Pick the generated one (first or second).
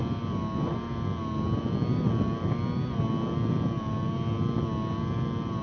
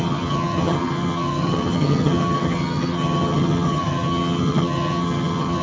second